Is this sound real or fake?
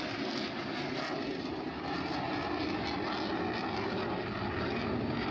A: real